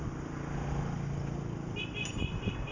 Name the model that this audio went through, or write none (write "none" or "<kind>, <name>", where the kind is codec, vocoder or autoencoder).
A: none